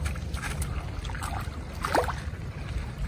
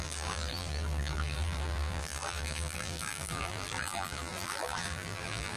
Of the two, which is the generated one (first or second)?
second